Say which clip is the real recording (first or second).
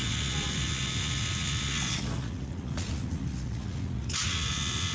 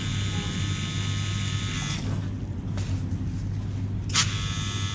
second